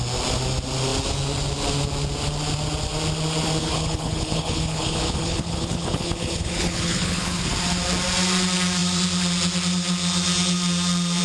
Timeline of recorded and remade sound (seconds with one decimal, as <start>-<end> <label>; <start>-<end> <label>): 0.0-3.6 recorded; 3.6-7.5 remade; 7.5-11.2 recorded